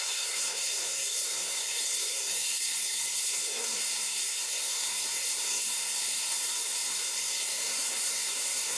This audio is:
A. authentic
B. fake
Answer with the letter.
B